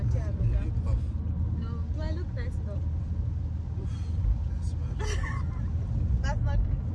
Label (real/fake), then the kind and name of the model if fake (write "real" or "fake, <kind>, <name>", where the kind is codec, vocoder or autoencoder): real